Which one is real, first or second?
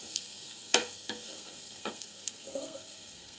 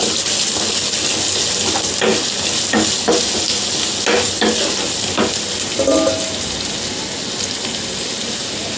second